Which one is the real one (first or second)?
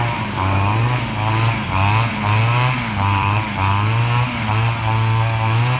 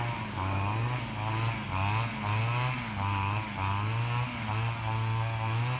second